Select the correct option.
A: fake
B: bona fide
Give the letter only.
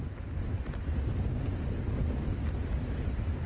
B